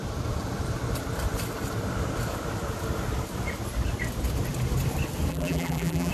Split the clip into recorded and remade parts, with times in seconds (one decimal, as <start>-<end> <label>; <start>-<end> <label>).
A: 0.0-5.3 recorded; 5.3-6.1 remade